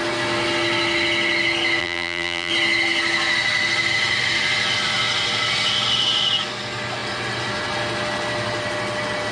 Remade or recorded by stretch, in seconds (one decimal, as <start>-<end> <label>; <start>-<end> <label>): 0.0-1.8 recorded; 1.8-2.5 remade; 2.5-9.3 recorded